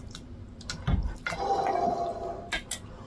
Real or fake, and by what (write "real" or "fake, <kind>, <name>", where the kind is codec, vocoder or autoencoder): real